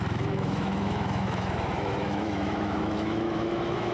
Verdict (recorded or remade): remade